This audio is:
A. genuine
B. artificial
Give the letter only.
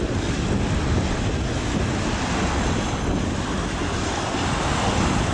A